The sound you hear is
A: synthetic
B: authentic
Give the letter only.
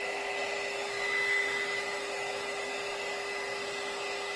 B